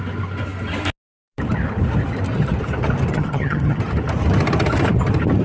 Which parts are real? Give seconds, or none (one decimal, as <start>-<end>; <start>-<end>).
0.0-3.1; 3.8-5.4